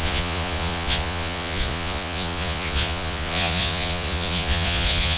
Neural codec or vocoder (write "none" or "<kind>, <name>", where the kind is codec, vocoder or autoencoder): vocoder, Vocos